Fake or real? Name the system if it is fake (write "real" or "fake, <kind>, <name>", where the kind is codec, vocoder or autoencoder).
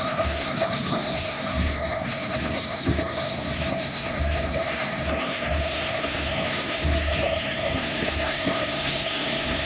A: fake, codec, SNAC